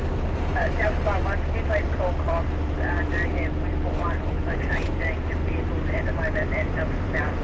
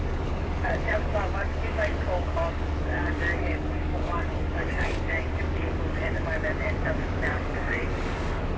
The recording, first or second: first